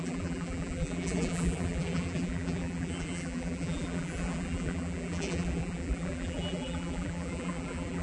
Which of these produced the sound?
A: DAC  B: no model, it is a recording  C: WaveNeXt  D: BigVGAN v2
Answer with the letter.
D